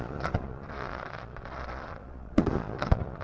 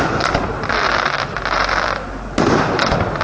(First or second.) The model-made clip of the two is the first